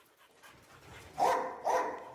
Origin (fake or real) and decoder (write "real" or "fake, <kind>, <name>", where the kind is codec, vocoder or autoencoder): real